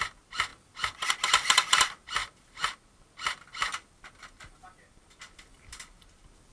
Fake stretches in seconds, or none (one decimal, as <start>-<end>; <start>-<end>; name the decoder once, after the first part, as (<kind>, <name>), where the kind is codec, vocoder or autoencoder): 0.5-1.1 (vocoder, BigVGAN v2)